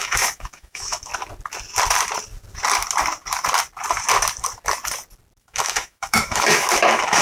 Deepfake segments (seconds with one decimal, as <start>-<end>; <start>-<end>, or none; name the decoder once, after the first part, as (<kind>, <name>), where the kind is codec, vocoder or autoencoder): 0.0-1.1 (autoencoder, DAC-VAE); 5.4-7.2